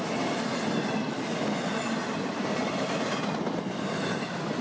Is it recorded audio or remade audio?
recorded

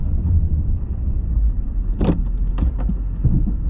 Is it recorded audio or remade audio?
recorded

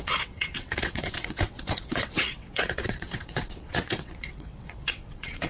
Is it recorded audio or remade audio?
remade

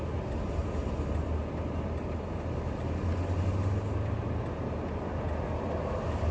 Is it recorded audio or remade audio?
recorded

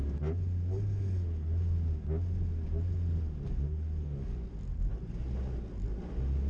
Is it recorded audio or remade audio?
recorded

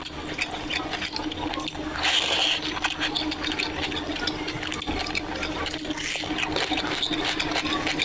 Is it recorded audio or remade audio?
recorded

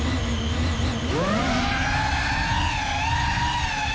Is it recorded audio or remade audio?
recorded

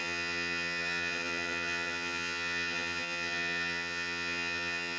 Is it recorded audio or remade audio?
remade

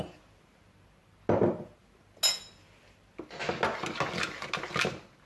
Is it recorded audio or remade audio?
recorded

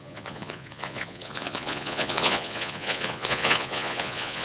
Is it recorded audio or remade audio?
remade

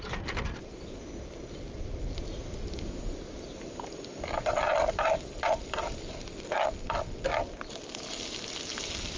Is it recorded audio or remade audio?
recorded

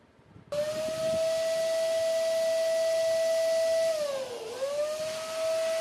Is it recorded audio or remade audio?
recorded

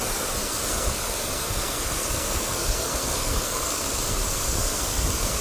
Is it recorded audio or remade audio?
remade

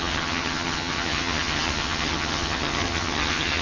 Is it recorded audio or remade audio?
remade